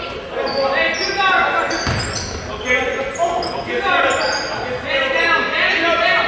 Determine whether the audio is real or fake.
real